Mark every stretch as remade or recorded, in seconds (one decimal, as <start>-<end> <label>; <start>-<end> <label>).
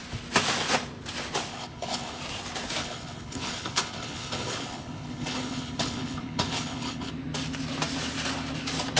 0.0-1.5 recorded; 1.5-2.2 remade; 2.2-2.8 recorded; 2.8-7.1 remade; 7.1-9.0 recorded